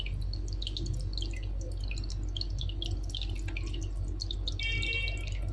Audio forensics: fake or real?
real